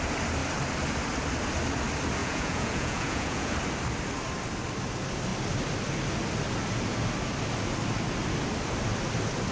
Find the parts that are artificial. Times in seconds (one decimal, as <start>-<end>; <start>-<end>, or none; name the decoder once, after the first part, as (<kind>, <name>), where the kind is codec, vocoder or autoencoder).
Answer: 2.2-3.5 (vocoder, Vocos)